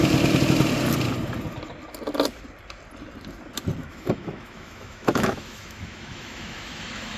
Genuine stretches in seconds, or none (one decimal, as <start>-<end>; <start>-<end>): 0.0-3.8

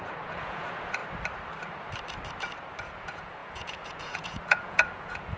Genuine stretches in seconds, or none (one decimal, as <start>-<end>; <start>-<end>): 1.0-2.8

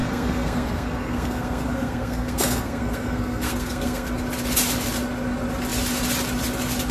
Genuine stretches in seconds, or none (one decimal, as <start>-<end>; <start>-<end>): 4.1-6.9

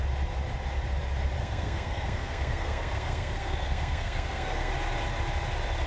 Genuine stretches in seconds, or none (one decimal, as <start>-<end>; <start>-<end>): 0.0-1.4; 4.7-5.9

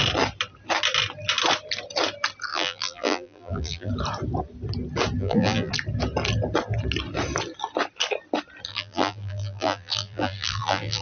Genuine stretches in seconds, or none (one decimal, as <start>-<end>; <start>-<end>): 0.0-2.5; 3.9-5.2; 5.7-8.7

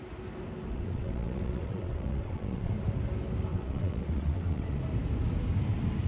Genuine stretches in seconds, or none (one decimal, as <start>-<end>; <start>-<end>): 0.0-0.7; 2.7-3.5; 4.8-6.1